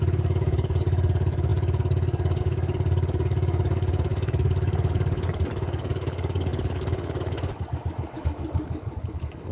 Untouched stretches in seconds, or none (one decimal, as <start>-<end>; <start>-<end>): none